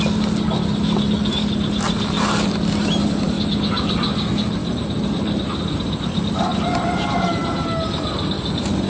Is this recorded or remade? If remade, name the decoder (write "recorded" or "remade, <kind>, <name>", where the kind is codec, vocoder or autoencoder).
recorded